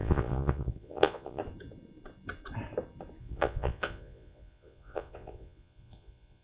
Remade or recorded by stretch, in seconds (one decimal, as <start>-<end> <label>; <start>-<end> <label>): 0.0-1.4 remade; 1.4-3.2 recorded; 3.2-6.4 remade